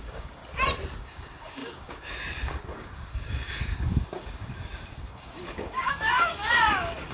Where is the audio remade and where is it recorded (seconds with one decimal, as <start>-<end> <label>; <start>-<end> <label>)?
0.0-0.4 remade; 0.4-1.0 recorded; 1.0-7.1 remade